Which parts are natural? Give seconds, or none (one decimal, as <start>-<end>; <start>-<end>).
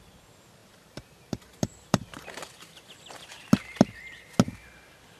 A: 0.0-0.6; 2.9-5.2